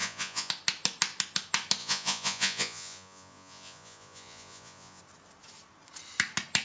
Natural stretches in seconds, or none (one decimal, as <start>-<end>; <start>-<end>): 0.5-1.8; 5.0-6.6